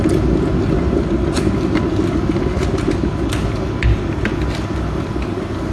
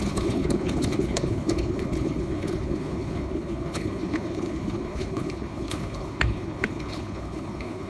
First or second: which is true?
first